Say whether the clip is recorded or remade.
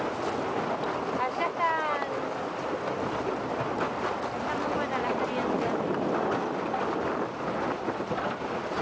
recorded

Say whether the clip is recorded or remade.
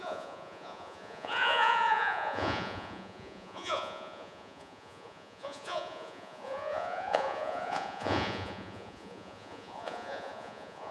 remade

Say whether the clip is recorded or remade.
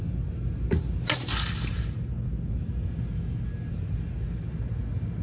recorded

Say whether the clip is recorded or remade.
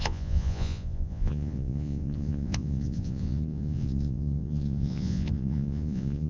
remade